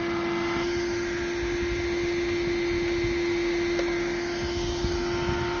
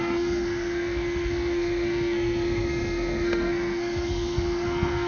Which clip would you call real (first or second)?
first